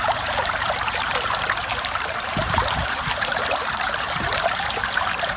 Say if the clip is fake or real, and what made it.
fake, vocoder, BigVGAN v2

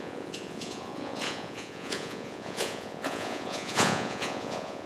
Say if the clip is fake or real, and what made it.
fake, vocoder, Vocos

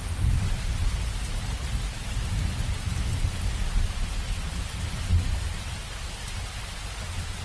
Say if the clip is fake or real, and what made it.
real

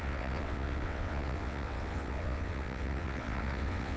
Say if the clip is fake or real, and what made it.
fake, vocoder, WaveNeXt